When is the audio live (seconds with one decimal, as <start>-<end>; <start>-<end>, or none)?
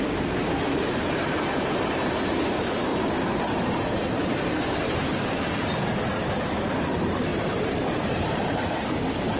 none